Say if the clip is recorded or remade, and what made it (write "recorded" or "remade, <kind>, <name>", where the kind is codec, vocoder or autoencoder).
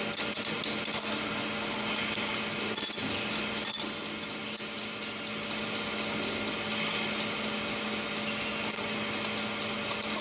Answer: recorded